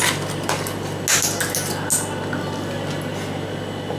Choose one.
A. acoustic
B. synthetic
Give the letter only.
A